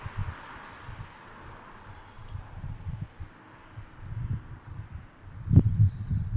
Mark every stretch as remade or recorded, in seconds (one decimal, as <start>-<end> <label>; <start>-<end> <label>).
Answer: 0.0-6.4 recorded